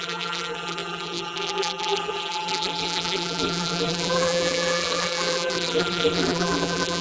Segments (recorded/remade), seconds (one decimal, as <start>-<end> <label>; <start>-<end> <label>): 0.0-7.0 remade